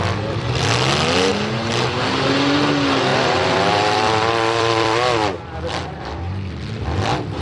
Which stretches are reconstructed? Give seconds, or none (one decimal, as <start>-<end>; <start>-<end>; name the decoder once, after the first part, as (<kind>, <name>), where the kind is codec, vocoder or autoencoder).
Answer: 3.1-6.5 (vocoder, BigVGAN v2)